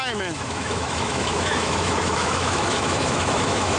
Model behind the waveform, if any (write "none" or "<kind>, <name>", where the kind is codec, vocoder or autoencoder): autoencoder, DAC-VAE